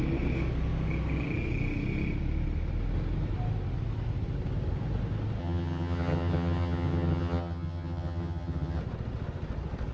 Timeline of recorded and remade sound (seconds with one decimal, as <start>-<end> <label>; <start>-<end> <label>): 0.0-5.4 recorded; 5.4-8.8 remade; 8.8-9.9 recorded